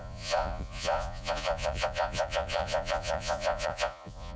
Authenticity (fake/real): fake